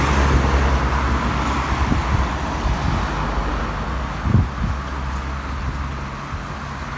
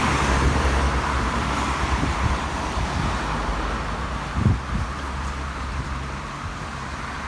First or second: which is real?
first